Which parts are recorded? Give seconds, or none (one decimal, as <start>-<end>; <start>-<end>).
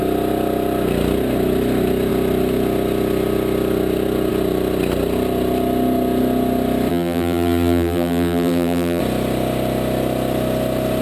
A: 0.0-6.9; 9.0-11.0